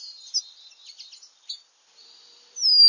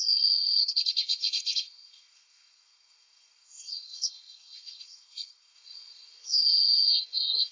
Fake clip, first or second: second